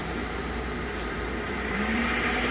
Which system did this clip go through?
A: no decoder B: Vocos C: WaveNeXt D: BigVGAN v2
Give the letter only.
D